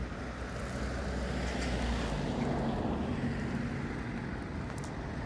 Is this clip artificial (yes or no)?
no